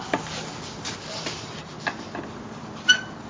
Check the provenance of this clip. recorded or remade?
recorded